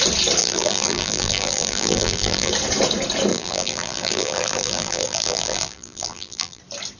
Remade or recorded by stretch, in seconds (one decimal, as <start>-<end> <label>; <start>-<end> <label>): 0.0-0.4 recorded; 0.4-2.5 remade; 2.5-3.3 recorded; 3.3-6.6 remade; 6.6-7.0 recorded